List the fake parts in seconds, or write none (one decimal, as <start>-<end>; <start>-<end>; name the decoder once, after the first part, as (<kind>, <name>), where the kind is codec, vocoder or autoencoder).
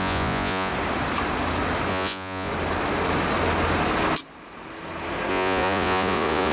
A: 0.0-0.7 (vocoder, Vocos); 1.9-2.5; 5.3-6.5